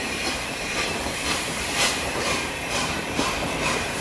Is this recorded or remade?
remade